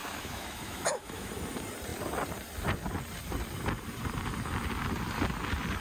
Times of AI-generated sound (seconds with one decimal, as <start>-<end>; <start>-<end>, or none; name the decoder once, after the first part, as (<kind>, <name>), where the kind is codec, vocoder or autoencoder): 0.0-1.3 (autoencoder, DAC-VAE)